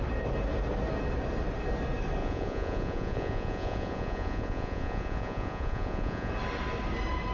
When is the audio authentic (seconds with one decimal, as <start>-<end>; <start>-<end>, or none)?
0.0-2.2; 6.3-7.3